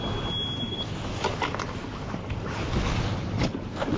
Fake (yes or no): no